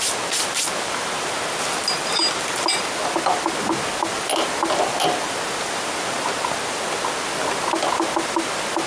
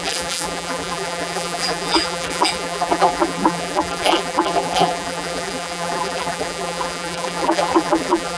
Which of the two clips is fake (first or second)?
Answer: second